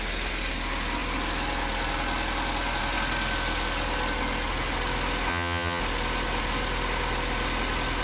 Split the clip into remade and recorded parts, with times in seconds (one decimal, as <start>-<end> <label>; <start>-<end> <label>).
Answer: 0.0-5.3 recorded; 5.3-5.8 remade; 5.8-8.0 recorded